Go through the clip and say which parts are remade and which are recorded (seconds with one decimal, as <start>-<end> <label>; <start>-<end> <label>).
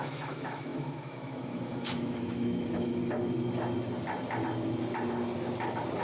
0.0-3.0 remade; 3.0-6.0 recorded